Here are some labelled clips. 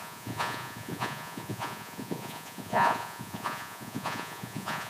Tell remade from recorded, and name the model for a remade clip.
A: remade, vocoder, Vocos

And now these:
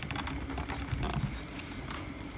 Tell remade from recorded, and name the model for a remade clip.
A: recorded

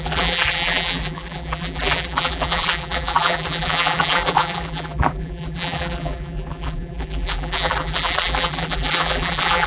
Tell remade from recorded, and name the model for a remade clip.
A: remade, vocoder, BigVGAN v2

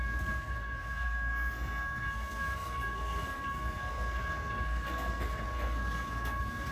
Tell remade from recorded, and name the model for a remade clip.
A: remade, codec, SNAC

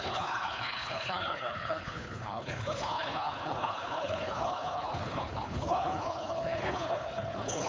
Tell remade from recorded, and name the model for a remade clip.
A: remade, codec, HILCodec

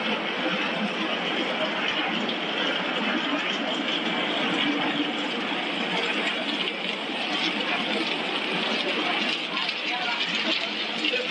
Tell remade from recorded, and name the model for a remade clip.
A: recorded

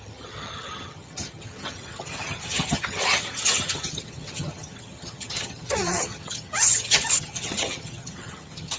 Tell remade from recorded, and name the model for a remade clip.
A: remade, vocoder, HiFi-GAN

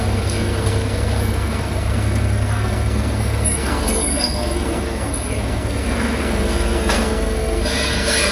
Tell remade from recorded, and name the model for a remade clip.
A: remade, codec, SNAC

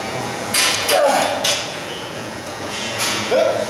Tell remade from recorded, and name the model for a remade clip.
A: remade, vocoder, Vocos